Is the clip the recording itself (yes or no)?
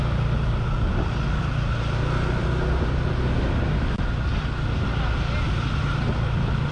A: yes